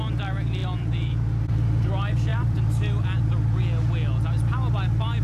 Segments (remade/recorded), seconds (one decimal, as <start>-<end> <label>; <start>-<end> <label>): 0.0-0.6 recorded; 0.6-1.9 remade; 1.9-2.3 recorded; 2.3-3.6 remade; 3.6-5.2 recorded